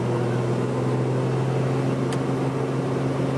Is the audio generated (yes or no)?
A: no